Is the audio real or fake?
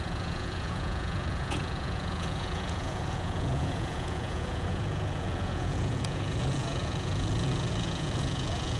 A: fake